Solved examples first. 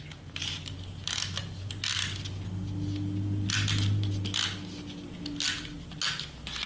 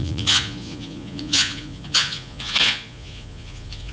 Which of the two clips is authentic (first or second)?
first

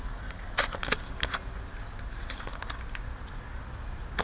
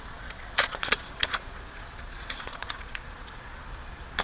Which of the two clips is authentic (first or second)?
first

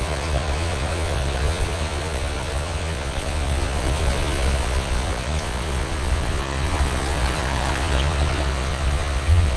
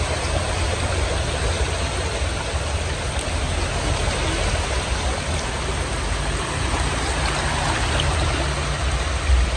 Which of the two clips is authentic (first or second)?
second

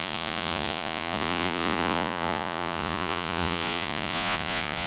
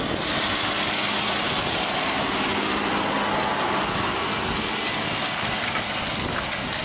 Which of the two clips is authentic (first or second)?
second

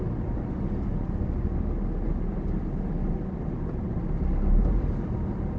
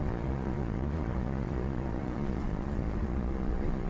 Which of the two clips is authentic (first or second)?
first